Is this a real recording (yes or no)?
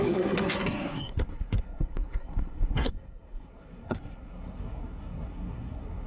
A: no